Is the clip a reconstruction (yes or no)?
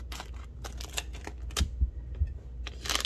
no